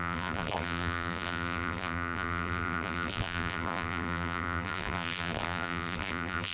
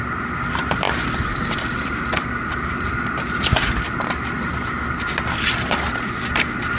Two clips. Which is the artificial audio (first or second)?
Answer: first